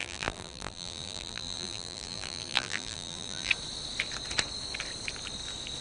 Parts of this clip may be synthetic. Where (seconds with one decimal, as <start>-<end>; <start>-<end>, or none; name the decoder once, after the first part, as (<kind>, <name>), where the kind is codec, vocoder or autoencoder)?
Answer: 0.0-3.5 (vocoder, BigVGAN v2)